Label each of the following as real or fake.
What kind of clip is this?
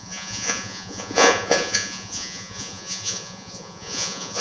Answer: fake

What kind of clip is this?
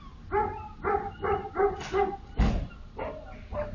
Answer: real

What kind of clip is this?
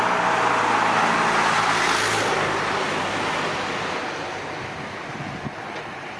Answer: real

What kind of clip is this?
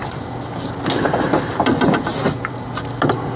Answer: real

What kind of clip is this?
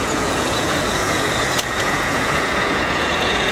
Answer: fake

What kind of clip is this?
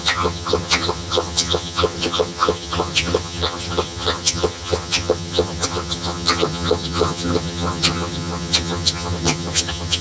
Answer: fake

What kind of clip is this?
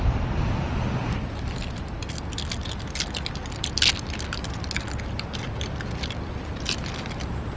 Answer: real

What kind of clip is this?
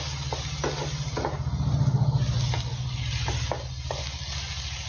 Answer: real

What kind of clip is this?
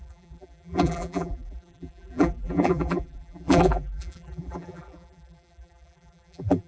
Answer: fake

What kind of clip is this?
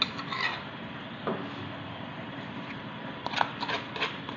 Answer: real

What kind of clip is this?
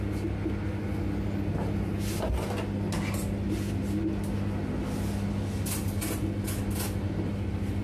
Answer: real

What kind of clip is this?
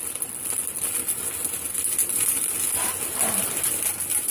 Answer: real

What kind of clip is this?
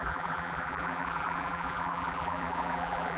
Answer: fake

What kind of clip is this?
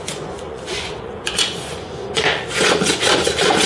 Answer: fake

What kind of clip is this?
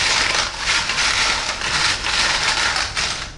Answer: real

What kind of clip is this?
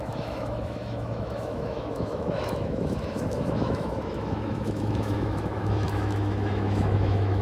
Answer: fake